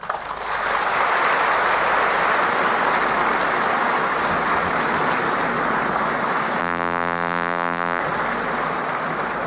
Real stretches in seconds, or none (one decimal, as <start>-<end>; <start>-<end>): 0.0-6.6; 8.0-9.5